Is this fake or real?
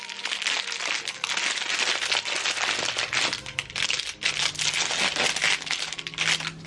real